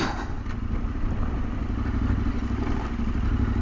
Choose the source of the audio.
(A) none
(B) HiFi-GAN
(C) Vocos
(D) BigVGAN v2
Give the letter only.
A